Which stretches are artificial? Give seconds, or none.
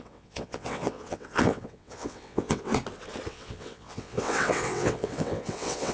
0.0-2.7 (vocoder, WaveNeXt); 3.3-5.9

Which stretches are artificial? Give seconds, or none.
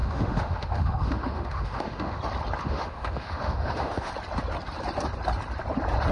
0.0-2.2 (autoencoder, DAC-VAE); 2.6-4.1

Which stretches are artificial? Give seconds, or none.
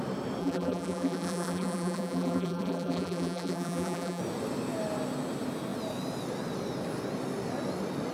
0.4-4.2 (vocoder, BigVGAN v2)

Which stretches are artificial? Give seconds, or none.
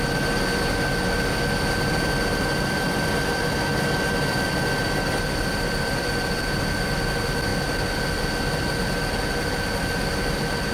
4.8-6.6 (vocoder, BigVGAN v2)